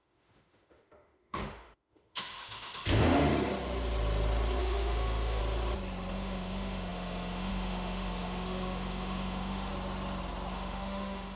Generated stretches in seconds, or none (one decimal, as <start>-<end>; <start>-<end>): 0.0-3.3; 4.6-5.4; 6.1-9.7; 10.5-11.4